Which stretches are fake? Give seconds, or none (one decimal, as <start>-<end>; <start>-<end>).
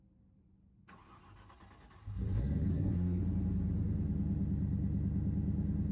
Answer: 2.7-3.2